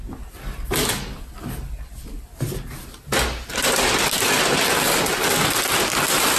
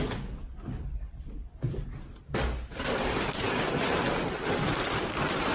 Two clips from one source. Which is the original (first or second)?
first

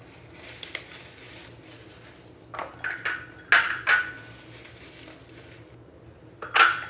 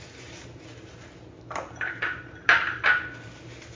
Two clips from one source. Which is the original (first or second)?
first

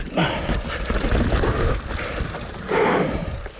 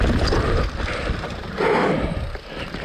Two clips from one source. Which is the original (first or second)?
first